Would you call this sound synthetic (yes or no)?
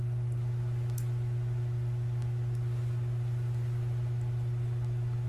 no